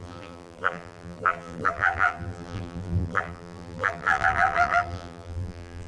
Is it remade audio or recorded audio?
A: remade